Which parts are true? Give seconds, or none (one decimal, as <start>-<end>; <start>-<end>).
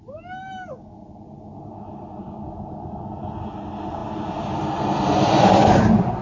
0.0-4.0; 5.8-6.2